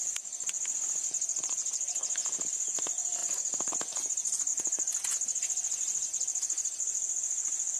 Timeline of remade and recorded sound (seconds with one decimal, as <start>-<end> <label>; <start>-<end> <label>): 0.0-7.8 remade